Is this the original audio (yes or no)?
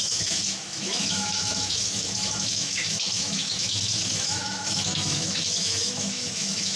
no